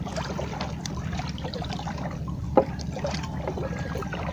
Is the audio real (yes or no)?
no